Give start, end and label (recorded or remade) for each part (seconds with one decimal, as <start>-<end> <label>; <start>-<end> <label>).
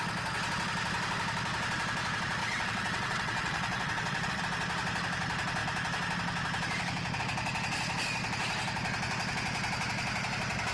0.0-2.4 recorded; 2.4-4.4 remade; 4.4-10.7 recorded